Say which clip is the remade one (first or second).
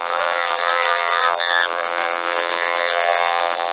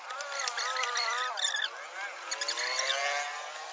first